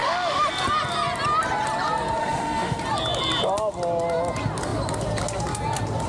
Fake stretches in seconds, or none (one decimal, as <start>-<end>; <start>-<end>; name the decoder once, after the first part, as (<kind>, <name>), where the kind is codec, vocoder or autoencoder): 0.0-0.5 (autoencoder, DAC-VAE); 2.2-2.8